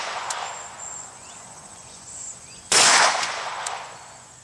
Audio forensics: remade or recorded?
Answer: remade